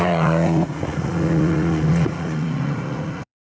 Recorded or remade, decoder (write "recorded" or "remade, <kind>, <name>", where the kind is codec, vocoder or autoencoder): remade, vocoder, Vocos